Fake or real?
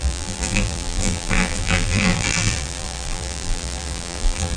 fake